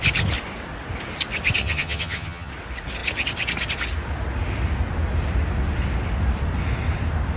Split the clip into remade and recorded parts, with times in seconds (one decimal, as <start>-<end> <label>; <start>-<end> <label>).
0.0-1.6 recorded; 1.6-2.5 remade; 2.5-7.4 recorded